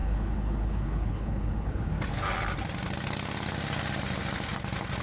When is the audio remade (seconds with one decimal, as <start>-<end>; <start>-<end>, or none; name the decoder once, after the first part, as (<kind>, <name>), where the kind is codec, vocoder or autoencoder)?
0.0-1.9 (codec, HILCodec)